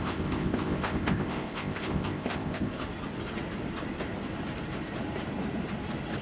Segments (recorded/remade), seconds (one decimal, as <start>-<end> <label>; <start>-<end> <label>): 0.0-2.8 remade; 2.8-6.2 recorded